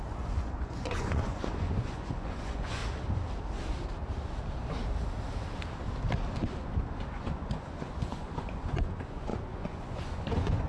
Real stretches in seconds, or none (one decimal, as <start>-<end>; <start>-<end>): 2.8-7.1